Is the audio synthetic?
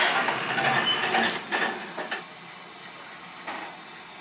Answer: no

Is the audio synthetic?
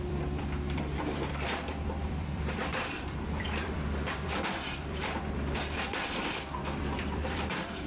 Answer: yes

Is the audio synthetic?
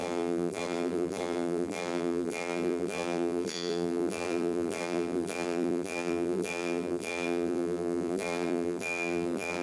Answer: yes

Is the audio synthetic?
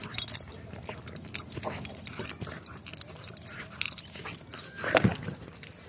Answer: no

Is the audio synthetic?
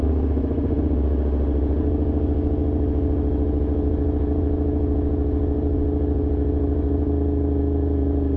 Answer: no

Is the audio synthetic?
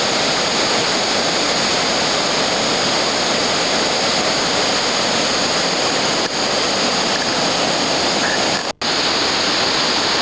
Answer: no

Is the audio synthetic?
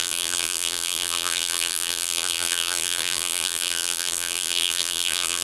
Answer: yes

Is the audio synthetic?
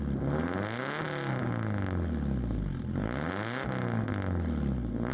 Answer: no